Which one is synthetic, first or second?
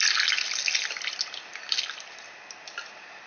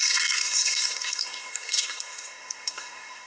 second